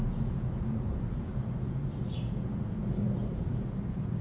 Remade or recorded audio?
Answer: remade